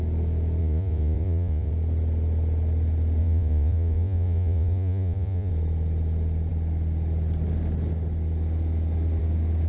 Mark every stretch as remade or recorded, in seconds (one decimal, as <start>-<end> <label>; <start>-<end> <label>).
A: 0.0-0.6 recorded; 0.6-1.7 remade; 1.7-3.2 recorded; 3.2-5.5 remade; 5.5-9.7 recorded